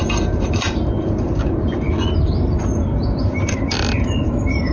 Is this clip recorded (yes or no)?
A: no